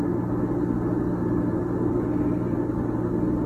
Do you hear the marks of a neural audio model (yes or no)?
no